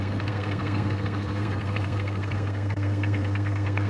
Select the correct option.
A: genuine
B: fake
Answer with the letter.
B